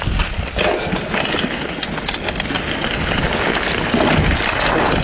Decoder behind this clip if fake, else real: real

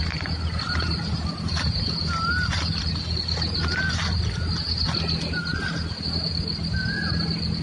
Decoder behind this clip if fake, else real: real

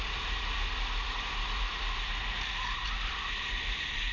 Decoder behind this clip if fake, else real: real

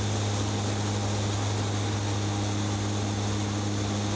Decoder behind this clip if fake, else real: real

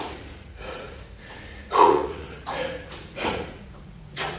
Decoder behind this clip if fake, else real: fake, vocoder, Vocos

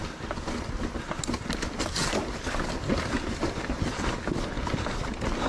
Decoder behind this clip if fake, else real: real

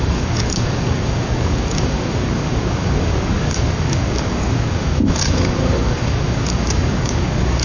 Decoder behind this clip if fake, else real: fake, codec, DAC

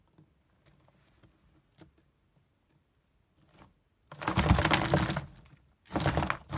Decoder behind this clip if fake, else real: real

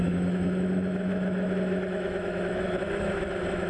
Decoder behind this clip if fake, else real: fake, autoencoder, DAC-VAE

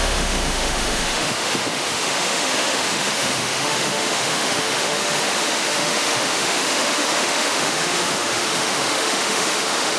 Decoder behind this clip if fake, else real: fake, autoencoder, DAC-VAE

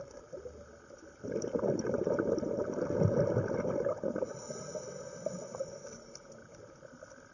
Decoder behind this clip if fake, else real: real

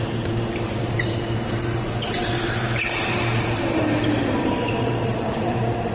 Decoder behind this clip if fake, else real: fake, vocoder, BigVGAN v2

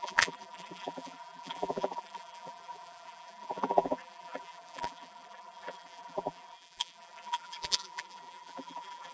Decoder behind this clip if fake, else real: fake, vocoder, BigVGAN v2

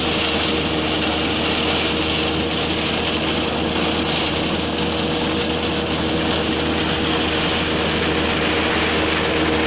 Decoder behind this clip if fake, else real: real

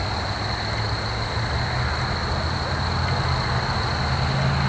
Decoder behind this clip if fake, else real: real